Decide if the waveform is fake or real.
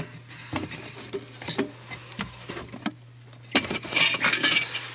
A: real